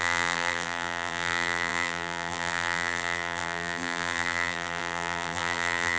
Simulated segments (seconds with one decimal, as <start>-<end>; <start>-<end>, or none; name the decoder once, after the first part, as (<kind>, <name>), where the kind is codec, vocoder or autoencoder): 0.0-6.0 (vocoder, BigVGAN v2)